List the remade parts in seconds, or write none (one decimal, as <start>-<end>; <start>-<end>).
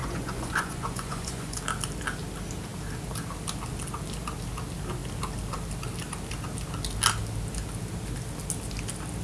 0.0-1.6